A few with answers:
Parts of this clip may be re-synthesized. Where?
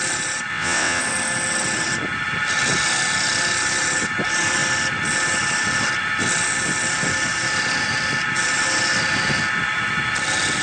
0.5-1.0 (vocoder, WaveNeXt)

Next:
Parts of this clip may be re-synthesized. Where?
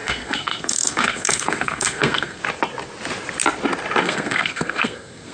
0.0-2.4 (codec, SNAC); 4.0-5.3